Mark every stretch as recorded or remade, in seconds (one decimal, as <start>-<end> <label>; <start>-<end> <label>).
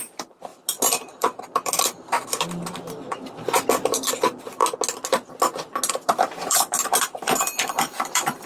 0.0-4.6 remade; 4.6-5.9 recorded; 5.9-8.5 remade